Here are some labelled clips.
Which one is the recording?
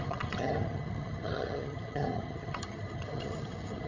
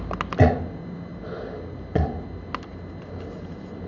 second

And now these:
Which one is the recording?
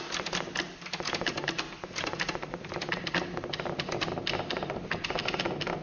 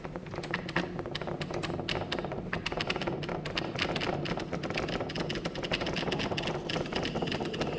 second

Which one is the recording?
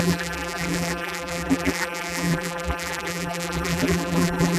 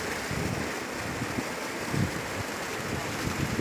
second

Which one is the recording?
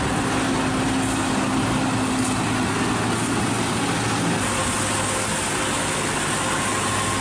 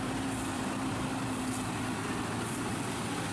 first